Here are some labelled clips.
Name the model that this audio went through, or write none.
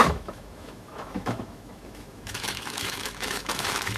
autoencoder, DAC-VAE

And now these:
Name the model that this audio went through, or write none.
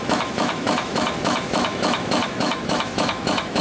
autoencoder, DAC-VAE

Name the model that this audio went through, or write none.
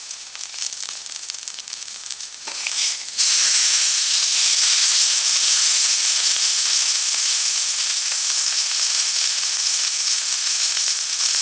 autoencoder, DAC-VAE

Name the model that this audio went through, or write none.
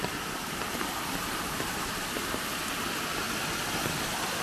none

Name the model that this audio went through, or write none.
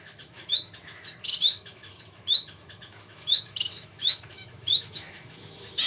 autoencoder, DAC-VAE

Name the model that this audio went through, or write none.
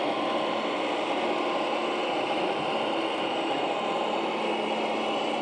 none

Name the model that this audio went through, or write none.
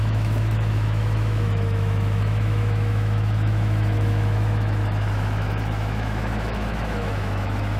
autoencoder, DAC-VAE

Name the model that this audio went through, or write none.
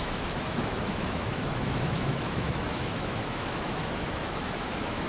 autoencoder, DAC-VAE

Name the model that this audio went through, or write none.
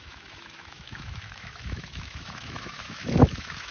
autoencoder, DAC-VAE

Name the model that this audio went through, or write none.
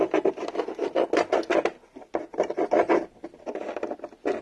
none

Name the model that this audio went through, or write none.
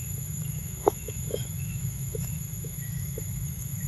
autoencoder, DAC-VAE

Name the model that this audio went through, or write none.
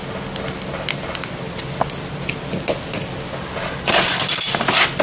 none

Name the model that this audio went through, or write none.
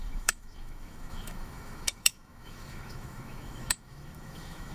autoencoder, DAC-VAE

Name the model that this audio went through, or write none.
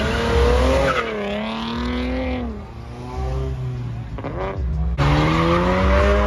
none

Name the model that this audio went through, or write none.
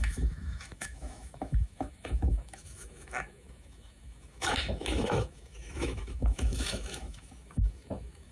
autoencoder, DAC-VAE